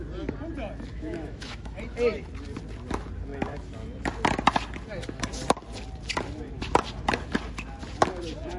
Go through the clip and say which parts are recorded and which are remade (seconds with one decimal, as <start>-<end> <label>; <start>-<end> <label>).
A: 0.0-0.9 recorded; 0.9-1.8 remade; 1.8-8.6 recorded